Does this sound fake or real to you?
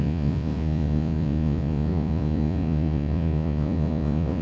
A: fake